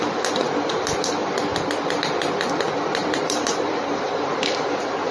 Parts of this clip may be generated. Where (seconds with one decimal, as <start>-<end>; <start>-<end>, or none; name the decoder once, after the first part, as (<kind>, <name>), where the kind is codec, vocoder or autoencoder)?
3.0-4.4 (vocoder, BigVGAN v2)